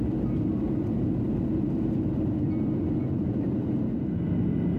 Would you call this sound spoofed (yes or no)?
no